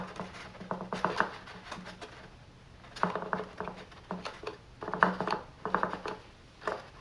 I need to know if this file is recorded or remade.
recorded